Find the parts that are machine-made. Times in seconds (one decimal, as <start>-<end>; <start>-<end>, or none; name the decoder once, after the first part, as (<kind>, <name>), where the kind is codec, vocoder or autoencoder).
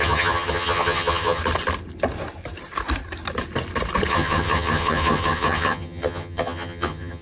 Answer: 0.0-1.4 (vocoder, HiFi-GAN); 4.1-7.2